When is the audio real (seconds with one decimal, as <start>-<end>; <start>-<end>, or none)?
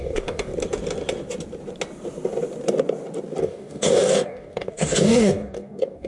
0.5-3.4